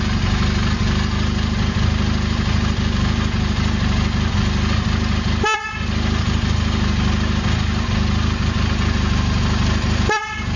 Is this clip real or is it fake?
real